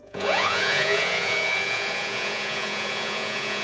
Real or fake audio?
fake